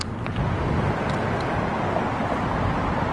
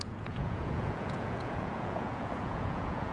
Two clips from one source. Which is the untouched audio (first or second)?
first